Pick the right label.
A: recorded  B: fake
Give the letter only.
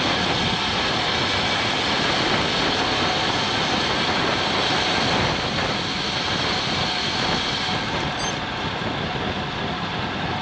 A